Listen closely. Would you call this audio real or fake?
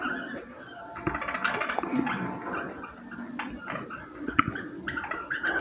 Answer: real